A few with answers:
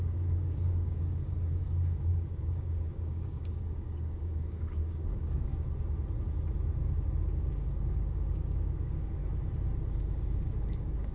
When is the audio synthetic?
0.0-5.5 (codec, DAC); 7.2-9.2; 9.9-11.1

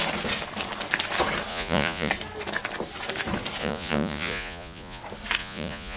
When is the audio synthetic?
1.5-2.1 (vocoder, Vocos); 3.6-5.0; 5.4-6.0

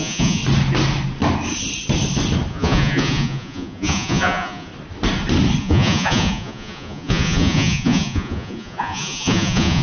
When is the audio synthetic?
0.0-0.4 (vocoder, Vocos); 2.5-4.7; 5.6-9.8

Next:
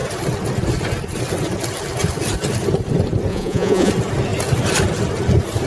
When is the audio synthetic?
3.3-3.9 (vocoder, Vocos)

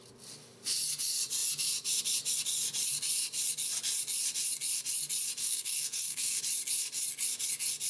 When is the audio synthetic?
5.4-6.4 (codec, SNAC)

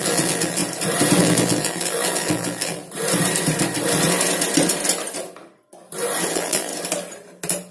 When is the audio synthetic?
0.0-0.6 (vocoder, BigVGAN v2); 1.2-2.8; 6.3-6.7